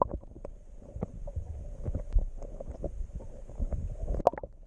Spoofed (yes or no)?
no